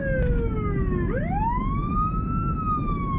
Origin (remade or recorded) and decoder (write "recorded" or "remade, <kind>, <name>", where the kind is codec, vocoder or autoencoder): recorded